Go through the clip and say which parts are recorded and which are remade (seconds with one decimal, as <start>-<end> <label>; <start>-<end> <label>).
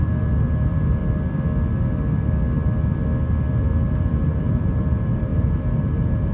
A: 0.0-1.0 remade; 1.0-3.6 recorded; 3.6-6.3 remade